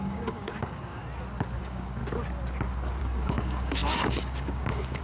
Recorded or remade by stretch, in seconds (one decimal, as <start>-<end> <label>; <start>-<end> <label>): 0.0-1.0 remade; 1.0-1.6 recorded; 1.6-2.0 remade; 2.0-3.0 recorded; 3.0-5.0 remade